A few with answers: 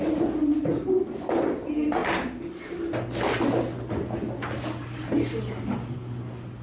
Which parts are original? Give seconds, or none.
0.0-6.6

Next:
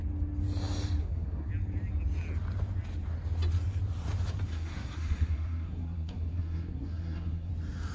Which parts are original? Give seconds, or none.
0.0-1.0; 1.5-4.5; 7.5-7.9

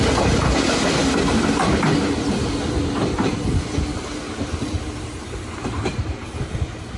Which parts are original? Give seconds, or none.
0.0-7.0